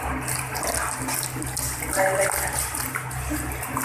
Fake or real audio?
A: real